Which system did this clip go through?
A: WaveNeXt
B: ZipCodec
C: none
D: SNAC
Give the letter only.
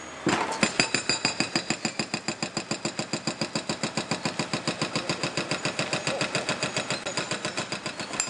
C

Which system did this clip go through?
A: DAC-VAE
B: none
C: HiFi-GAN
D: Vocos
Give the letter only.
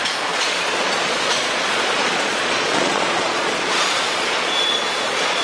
D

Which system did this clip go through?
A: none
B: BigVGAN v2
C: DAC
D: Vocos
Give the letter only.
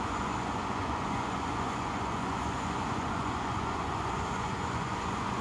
D